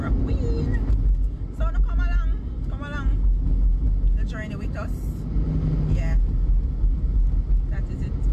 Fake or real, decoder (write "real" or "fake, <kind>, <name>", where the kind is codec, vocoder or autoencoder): real